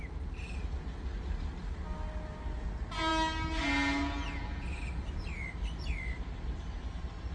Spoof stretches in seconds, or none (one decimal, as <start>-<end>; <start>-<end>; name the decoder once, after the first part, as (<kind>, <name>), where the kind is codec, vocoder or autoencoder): none